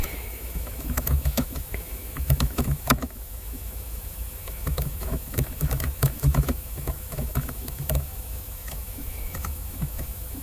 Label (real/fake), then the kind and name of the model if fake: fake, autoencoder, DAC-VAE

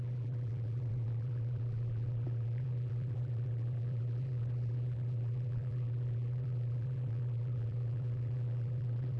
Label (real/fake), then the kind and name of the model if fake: fake, vocoder, BigVGAN v2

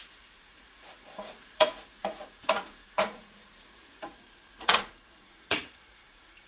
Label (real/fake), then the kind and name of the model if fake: fake, vocoder, Vocos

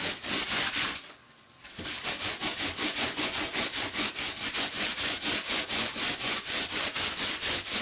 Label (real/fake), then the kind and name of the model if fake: fake, vocoder, Vocos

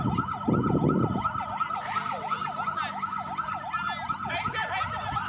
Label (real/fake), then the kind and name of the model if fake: real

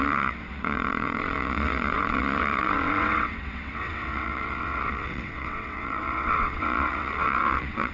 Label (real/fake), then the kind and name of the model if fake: fake, vocoder, WaveNeXt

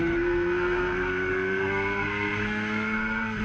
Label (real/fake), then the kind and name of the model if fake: fake, codec, SNAC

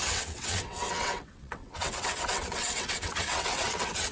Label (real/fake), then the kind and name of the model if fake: fake, vocoder, WaveNeXt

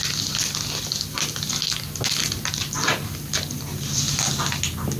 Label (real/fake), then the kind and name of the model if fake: real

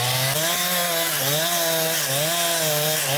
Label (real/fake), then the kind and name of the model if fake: real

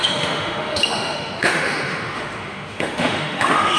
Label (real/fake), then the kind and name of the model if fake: fake, autoencoder, DAC-VAE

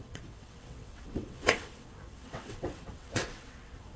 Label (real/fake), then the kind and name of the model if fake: fake, vocoder, WaveNeXt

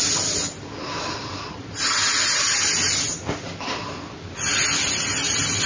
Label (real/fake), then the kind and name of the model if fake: real